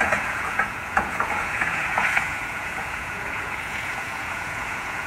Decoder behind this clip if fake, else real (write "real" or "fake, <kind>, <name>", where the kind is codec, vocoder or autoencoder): fake, vocoder, Vocos